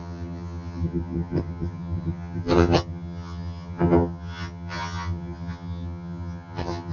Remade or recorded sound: remade